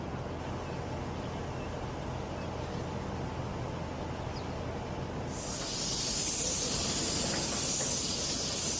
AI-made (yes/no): no